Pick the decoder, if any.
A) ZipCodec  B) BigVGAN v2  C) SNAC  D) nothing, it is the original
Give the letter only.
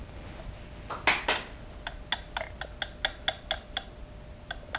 D